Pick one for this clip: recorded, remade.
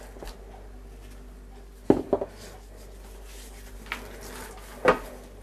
recorded